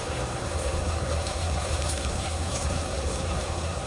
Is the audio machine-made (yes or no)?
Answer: yes